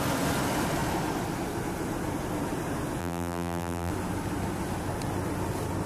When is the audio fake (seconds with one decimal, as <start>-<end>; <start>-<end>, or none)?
3.0-3.9